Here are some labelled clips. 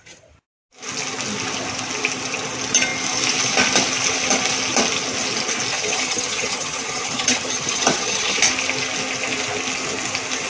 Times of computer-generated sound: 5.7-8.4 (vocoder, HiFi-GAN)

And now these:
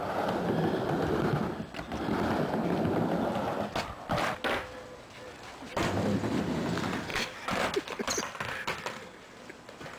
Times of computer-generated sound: 7.1-7.6 (vocoder, BigVGAN v2)

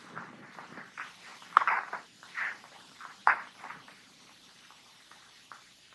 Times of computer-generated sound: 0.0-5.9 (vocoder, BigVGAN v2)

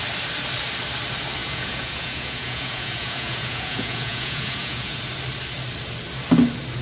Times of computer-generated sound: 1.4-5.0 (vocoder, Vocos)

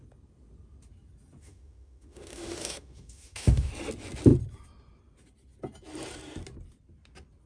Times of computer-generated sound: 1.4-3.7 (autoencoder, DAC-VAE)